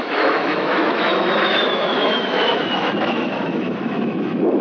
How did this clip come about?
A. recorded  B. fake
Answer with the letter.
B